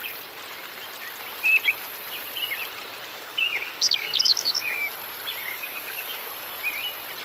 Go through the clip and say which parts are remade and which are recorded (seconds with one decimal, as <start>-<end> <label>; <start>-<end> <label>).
0.0-3.1 recorded; 3.1-4.9 remade; 4.9-5.4 recorded; 5.4-6.3 remade; 6.3-7.2 recorded